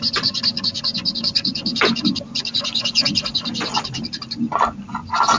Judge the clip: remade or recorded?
recorded